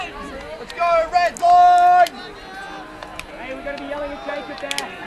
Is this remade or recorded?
recorded